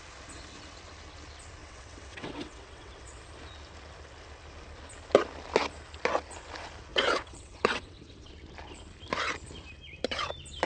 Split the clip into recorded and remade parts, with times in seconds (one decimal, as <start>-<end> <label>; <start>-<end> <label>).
0.0-1.6 recorded; 1.6-3.2 remade; 3.2-6.9 recorded; 6.9-8.3 remade; 8.3-10.7 recorded